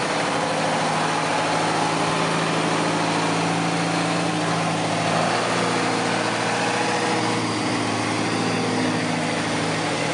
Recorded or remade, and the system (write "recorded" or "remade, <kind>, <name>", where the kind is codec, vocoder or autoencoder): recorded